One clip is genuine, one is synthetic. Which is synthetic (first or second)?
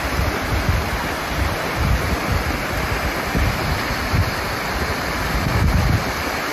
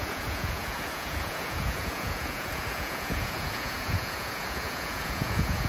second